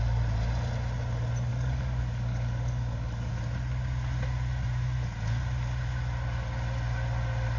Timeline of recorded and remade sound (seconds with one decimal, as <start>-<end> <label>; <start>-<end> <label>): 0.0-1.5 recorded; 1.5-3.3 remade; 3.3-7.6 recorded